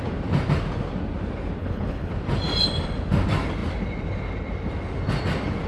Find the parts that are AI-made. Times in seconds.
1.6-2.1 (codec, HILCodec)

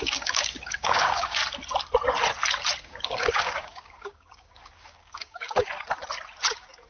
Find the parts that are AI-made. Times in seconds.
0.0-1.4 (codec, DAC); 2.8-5.7; 6.5-6.9

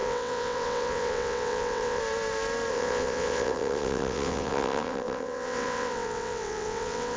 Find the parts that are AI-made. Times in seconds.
0.0-2.0 (vocoder, WaveNeXt); 2.7-7.2

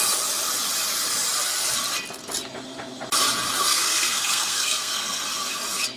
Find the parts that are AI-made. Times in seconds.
3.7-5.2 (codec, SNAC)

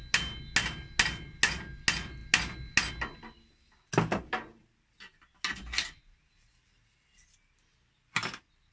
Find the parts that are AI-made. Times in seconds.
none

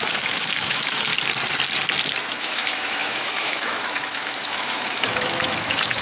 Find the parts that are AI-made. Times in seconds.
0.0-1.1 (autoencoder, DAC-VAE); 2.4-6.0

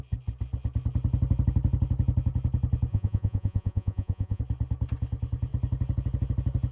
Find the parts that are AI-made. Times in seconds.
2.9-4.4 (vocoder, Vocos)

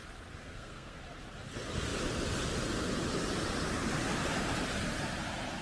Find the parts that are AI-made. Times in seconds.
0.4-1.0 (codec, SNAC)